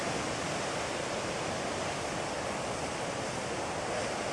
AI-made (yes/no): no